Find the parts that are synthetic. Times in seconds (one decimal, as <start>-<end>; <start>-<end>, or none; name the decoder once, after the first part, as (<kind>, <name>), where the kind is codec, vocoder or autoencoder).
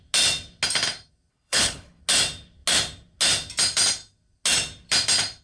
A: 1.3-2.0 (codec, HILCodec)